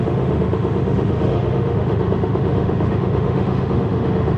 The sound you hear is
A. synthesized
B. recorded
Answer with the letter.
A